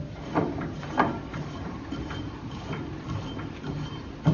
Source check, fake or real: real